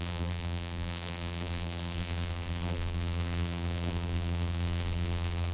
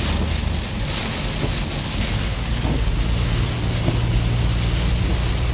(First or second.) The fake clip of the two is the first